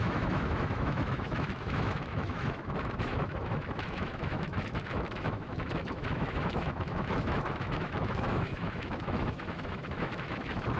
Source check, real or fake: fake